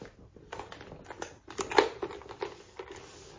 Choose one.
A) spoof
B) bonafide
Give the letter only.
B